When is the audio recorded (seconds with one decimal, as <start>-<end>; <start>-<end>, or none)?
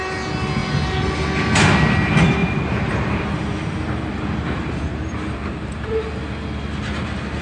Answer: 0.0-2.4; 6.1-7.4